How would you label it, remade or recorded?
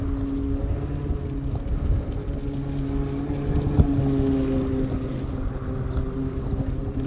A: recorded